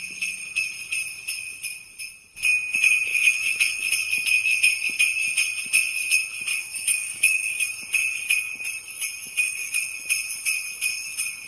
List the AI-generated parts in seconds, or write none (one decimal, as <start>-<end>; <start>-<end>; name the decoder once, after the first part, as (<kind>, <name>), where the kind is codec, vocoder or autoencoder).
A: 3.1-3.9 (autoencoder, DAC-VAE); 6.5-7.7; 9.2-9.8